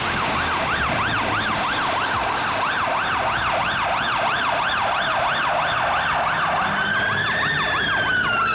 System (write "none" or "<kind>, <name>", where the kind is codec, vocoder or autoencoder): none